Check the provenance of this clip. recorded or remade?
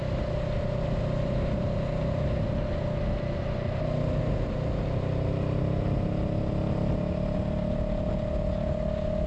recorded